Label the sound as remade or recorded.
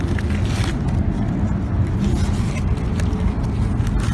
recorded